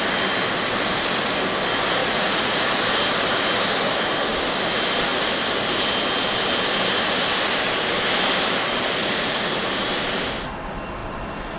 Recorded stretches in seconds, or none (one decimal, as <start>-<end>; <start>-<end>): 0.0-2.0; 2.8-9.0; 9.7-11.6